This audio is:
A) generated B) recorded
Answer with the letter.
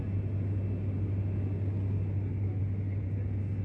B